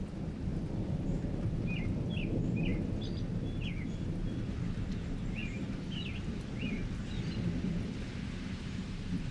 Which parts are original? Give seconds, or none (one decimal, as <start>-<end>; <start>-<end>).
2.7-3.9